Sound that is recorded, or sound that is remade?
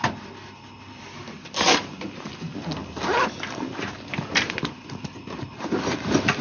recorded